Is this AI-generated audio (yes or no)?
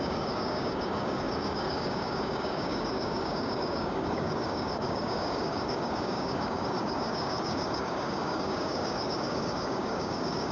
yes